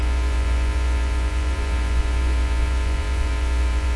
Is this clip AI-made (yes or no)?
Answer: yes